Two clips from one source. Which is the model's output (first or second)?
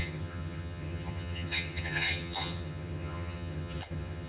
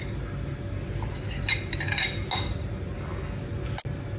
first